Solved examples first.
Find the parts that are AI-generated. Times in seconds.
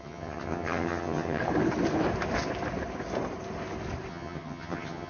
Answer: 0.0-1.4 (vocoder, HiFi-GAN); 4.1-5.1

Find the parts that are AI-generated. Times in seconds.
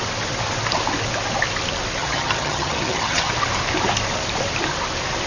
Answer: 2.0-3.3 (vocoder, HiFi-GAN)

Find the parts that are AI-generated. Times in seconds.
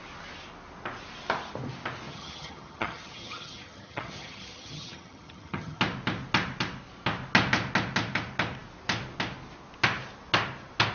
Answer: 2.1-5.8 (vocoder, HiFi-GAN)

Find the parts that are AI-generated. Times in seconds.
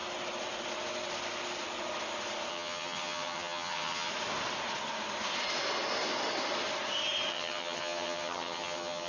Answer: 2.5-4.1 (vocoder, HiFi-GAN); 7.3-9.1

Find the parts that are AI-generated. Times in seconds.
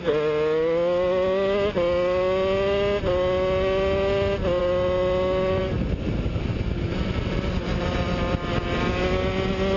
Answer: none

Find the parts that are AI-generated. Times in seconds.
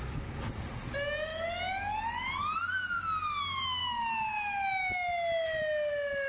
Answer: none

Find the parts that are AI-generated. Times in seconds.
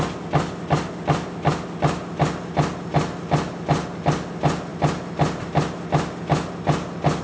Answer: none